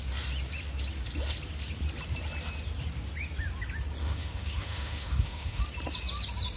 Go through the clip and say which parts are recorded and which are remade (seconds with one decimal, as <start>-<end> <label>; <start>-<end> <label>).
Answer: 0.0-4.0 recorded; 4.0-5.6 remade; 5.6-6.6 recorded